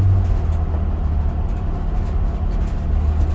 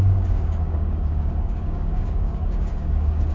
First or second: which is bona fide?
first